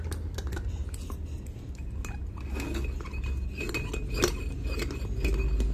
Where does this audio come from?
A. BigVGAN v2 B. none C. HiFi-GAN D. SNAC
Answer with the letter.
B